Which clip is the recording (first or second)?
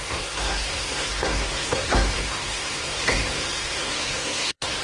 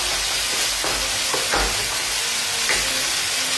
second